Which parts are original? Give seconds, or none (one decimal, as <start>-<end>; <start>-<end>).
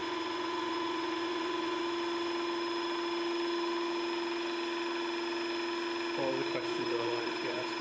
1.8-6.7